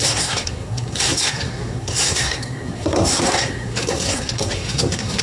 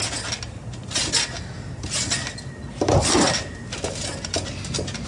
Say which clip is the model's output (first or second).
first